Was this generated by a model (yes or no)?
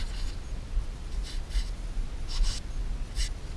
no